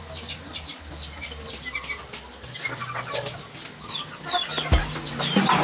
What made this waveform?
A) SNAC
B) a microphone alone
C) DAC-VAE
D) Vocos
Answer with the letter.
B